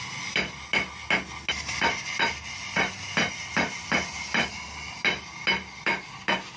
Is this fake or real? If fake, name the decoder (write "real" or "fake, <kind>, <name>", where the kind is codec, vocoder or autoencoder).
real